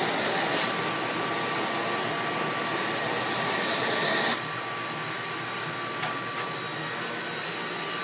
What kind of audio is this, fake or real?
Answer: real